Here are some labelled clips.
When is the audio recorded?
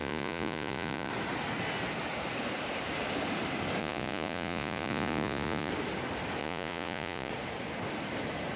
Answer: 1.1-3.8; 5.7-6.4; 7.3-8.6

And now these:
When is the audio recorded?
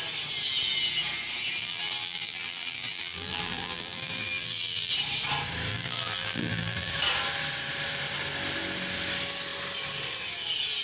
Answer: 0.0-1.6; 4.9-5.7; 6.9-10.8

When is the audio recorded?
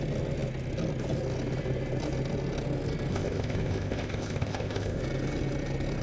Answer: 0.0-3.1; 5.0-6.0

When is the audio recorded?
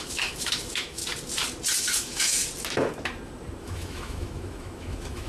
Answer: 1.0-1.8; 2.4-3.6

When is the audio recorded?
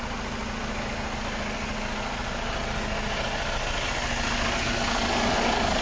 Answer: 0.0-5.8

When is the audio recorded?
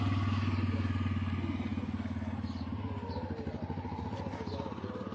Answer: 0.0-5.1